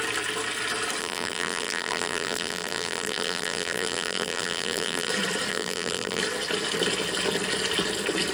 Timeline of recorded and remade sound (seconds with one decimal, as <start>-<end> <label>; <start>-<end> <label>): 0.0-1.0 recorded; 1.0-5.1 remade; 5.1-5.5 recorded; 5.5-6.2 remade; 6.2-8.3 recorded